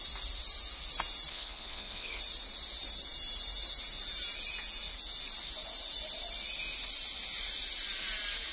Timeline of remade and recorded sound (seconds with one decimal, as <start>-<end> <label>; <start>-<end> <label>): 0.0-1.3 recorded; 1.3-2.2 remade; 2.2-8.5 recorded